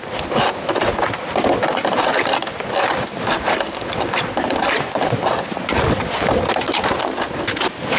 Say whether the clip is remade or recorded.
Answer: recorded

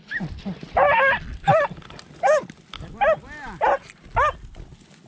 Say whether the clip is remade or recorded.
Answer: recorded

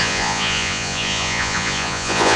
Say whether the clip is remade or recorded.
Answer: remade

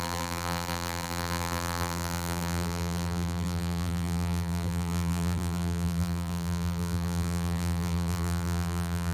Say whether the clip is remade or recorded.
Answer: remade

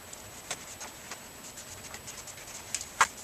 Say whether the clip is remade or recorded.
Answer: recorded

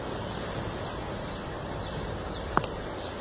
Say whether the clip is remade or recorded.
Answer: recorded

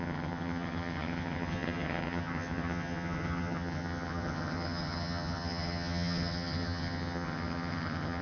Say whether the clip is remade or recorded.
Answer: remade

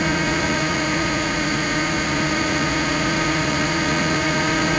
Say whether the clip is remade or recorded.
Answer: remade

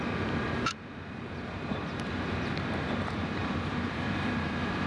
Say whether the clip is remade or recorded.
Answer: remade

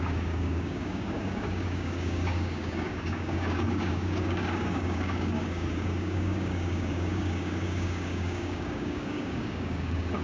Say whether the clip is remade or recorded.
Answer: remade